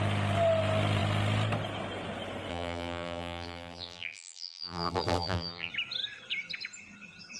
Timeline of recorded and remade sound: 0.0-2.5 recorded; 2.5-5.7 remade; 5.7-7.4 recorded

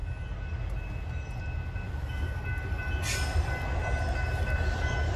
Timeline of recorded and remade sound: 0.0-5.2 recorded

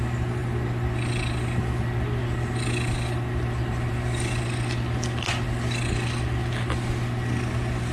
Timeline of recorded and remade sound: 0.0-7.9 recorded

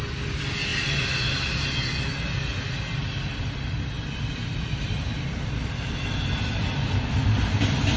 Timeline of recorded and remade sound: 0.0-8.0 recorded